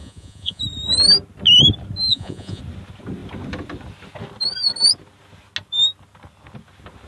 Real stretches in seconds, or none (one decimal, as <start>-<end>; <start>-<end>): 0.6-2.1; 2.6-7.1